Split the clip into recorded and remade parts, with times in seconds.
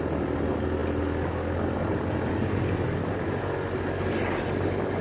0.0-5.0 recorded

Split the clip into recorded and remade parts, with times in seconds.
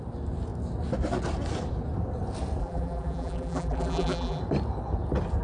0.0-2.6 recorded; 2.6-4.4 remade; 4.4-5.4 recorded